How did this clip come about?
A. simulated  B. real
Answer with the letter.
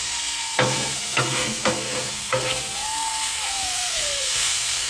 A